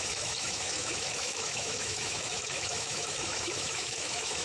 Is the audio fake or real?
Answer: fake